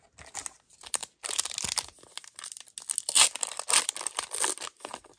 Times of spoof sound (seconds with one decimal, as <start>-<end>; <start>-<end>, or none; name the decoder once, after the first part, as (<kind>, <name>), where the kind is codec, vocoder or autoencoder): none